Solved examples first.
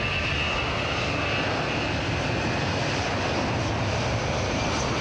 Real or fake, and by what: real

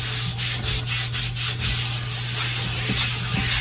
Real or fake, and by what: real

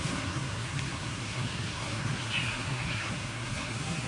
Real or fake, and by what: fake, codec, SNAC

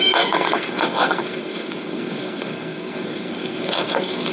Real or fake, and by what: fake, codec, SNAC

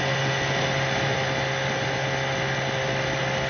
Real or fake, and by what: real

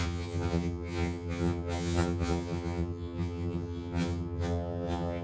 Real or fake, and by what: fake, vocoder, HiFi-GAN